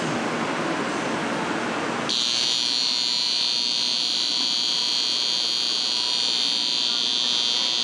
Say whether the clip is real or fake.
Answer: real